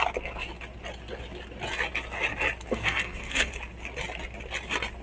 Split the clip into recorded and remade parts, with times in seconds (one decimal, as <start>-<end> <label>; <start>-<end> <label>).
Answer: 0.0-2.7 recorded; 2.7-3.5 remade; 3.5-5.0 recorded